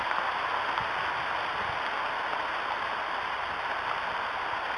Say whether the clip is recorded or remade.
recorded